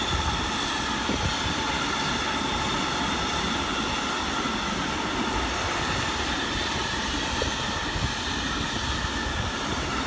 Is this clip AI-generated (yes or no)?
no